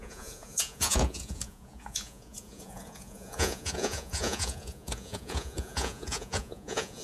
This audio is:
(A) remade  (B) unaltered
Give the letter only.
A